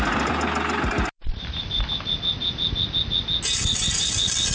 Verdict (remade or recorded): recorded